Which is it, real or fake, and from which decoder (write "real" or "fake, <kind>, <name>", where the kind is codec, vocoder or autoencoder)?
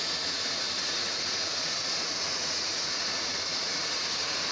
fake, vocoder, Vocos